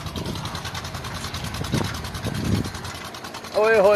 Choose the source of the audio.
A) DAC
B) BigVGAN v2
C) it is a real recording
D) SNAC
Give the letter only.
C